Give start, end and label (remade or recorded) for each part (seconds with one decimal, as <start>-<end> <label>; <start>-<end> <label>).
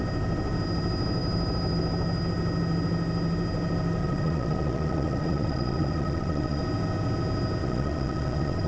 0.0-4.0 recorded; 4.0-6.6 remade; 6.6-7.6 recorded; 7.6-8.7 remade